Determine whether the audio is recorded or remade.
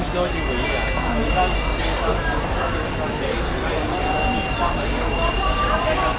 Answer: recorded